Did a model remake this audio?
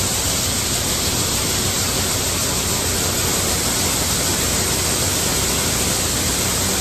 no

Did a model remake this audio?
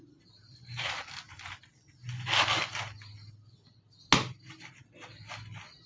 no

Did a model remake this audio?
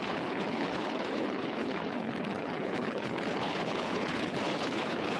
yes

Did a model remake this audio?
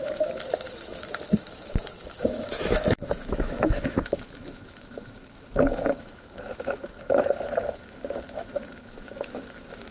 yes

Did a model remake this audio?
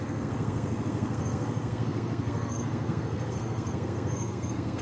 yes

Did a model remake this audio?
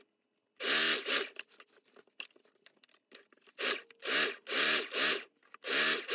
no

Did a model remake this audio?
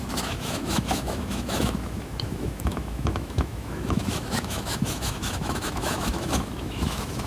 yes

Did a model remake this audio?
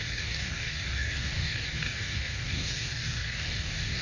yes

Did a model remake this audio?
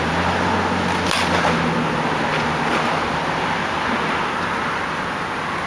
no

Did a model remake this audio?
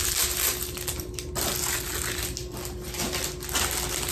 no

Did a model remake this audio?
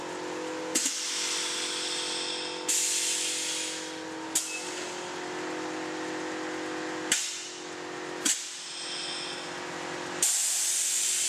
no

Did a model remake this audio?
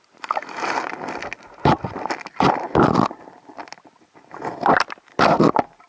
no